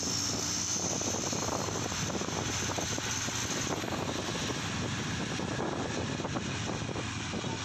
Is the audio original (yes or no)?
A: yes